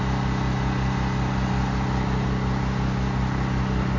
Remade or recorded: recorded